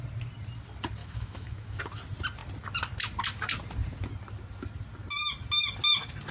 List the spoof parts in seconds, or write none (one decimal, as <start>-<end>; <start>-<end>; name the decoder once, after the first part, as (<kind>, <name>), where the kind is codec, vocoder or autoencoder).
1.0-1.8 (autoencoder, DAC-VAE)